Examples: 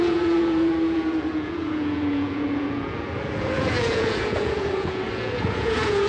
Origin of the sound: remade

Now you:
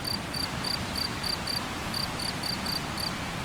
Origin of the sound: recorded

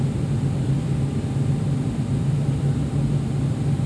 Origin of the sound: recorded